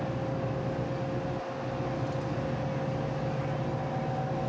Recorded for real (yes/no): yes